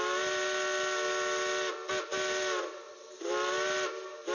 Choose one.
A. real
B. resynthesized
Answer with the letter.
A